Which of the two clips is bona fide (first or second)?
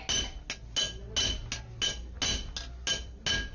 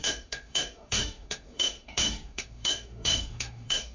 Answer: first